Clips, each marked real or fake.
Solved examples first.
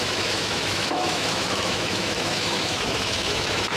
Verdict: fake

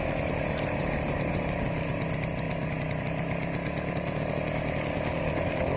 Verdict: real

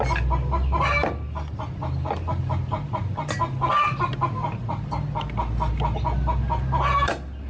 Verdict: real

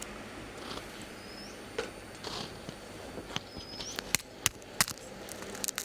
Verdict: real